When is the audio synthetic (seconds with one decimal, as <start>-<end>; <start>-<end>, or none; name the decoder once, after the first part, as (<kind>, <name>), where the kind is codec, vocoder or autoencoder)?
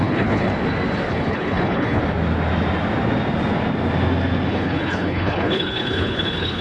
0.0-0.5 (codec, HILCodec); 1.1-2.0; 4.5-6.6